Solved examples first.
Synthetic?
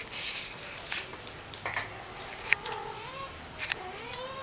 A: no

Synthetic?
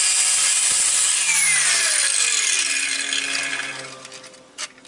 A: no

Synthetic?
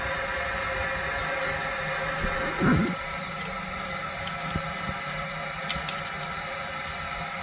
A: no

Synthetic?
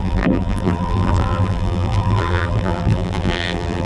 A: yes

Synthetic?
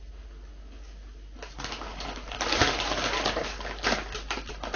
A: no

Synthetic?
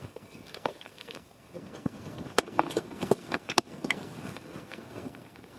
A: yes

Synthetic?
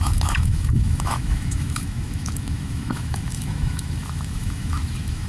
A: yes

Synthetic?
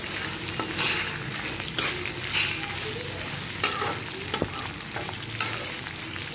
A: no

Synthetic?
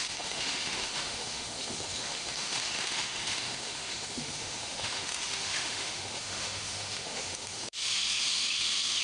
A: yes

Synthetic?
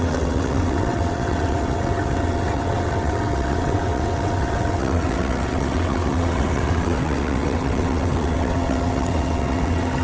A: yes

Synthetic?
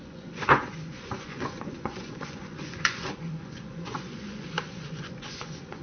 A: yes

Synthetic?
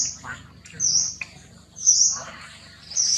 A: no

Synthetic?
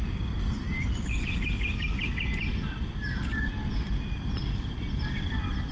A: no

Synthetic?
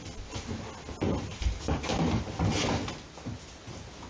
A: no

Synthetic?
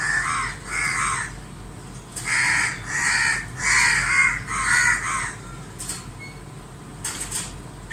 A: no